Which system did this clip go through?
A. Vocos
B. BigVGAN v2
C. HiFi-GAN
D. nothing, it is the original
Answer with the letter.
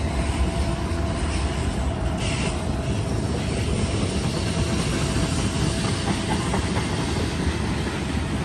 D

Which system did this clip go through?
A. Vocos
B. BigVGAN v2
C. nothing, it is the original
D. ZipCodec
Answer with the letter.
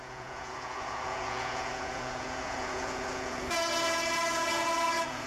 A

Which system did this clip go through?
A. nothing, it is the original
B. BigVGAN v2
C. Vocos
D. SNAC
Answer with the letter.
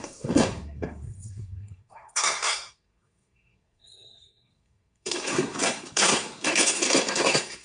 D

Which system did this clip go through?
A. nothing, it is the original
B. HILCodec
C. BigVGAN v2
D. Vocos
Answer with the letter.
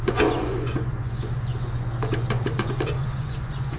D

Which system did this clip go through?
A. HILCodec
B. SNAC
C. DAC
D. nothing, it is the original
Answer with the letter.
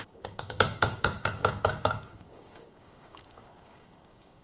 C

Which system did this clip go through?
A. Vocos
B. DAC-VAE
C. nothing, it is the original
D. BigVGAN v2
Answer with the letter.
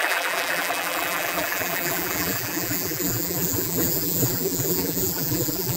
D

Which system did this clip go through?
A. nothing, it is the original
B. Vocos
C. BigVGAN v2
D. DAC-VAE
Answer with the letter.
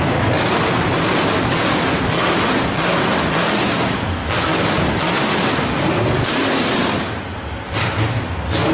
A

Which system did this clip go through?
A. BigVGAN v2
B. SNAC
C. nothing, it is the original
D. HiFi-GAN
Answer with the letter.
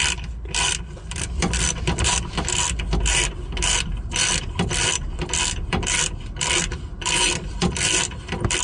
A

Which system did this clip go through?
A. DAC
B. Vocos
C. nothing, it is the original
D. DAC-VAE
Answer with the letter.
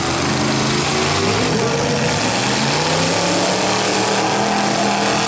C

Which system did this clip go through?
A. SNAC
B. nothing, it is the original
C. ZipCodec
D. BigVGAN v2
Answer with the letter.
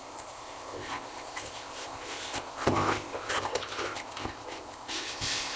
C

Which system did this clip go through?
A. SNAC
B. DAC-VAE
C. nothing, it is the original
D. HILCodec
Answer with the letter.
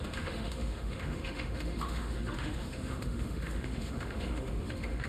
B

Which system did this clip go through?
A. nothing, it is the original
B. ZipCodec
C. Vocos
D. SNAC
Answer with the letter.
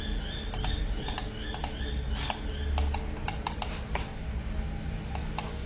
A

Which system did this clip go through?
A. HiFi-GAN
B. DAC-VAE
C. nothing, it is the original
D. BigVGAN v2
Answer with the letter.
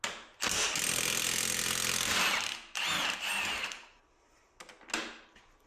C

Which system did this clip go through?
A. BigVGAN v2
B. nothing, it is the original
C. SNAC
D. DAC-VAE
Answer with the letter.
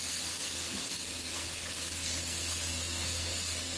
C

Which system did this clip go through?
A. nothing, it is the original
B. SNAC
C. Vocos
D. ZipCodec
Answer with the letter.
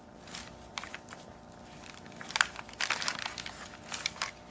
A